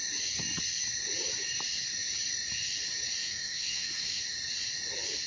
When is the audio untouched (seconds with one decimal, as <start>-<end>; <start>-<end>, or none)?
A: 0.0-3.2; 4.2-5.3